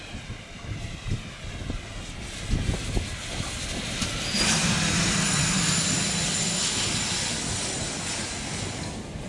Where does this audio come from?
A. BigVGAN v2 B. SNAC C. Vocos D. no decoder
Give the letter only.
D